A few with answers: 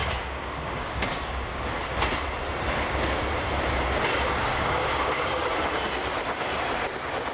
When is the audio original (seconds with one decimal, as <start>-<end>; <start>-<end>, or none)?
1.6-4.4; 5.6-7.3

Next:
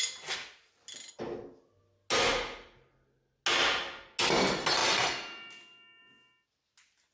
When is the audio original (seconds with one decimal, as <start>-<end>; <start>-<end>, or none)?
0.0-7.1

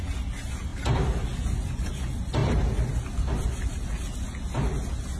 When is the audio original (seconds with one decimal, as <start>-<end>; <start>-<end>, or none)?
0.0-5.2

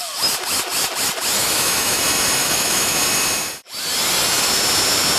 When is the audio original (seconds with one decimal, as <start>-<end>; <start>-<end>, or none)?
0.0-1.4; 2.0-2.4; 3.0-5.2